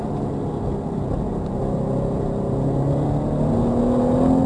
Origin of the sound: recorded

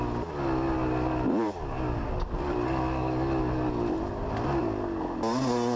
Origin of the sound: recorded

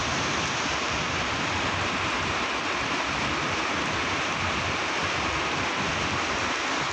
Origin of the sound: recorded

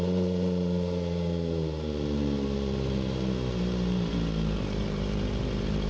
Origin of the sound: remade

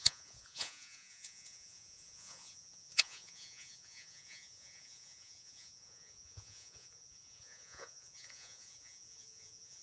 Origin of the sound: remade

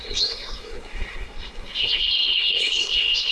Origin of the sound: remade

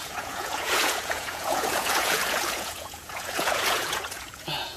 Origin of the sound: remade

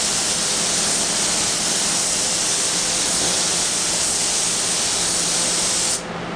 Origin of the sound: recorded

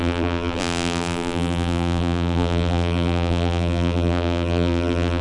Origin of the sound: remade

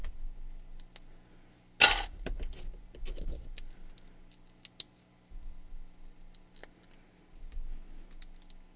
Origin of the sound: recorded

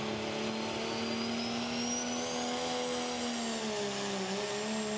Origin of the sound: recorded